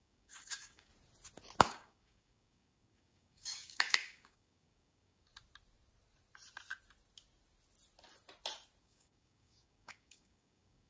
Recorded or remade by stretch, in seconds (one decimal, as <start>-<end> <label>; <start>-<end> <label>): 0.0-0.9 remade; 0.9-1.6 recorded; 1.6-5.3 remade; 5.3-8.8 recorded; 8.8-10.9 remade